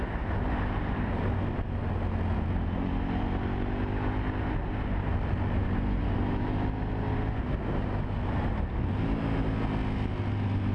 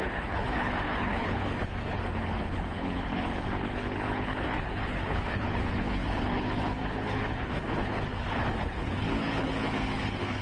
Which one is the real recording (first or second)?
first